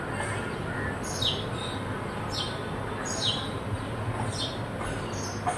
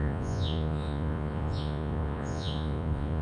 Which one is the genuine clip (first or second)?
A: first